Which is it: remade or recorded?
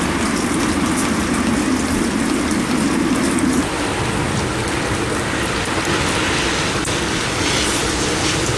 recorded